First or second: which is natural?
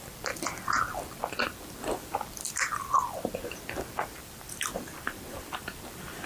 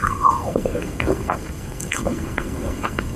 first